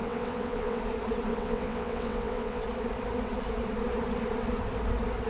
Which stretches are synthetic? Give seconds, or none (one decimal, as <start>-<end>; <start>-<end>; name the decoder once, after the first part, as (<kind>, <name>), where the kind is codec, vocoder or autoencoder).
0.0-0.8 (vocoder, WaveNeXt); 1.3-2.6